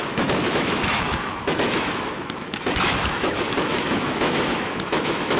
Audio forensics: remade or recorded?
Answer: remade